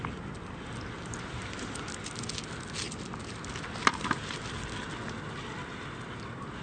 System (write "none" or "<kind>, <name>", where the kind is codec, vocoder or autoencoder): none